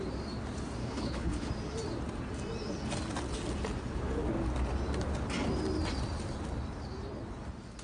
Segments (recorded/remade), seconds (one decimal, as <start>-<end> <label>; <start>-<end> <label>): 0.0-0.8 recorded; 0.8-1.5 remade; 1.5-7.8 recorded